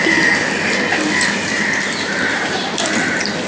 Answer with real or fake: real